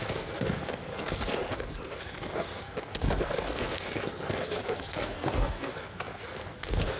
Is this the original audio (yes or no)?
no